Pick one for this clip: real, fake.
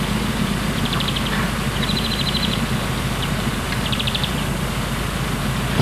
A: fake